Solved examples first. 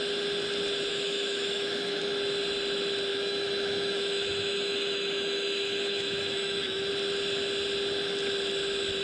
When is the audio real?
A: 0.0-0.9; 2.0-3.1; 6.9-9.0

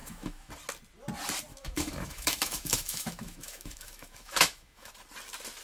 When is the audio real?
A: 0.5-1.5; 4.9-5.6

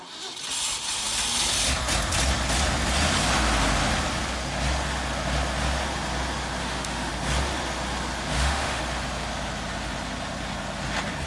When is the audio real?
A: 0.0-6.6; 7.1-8.3; 8.8-11.3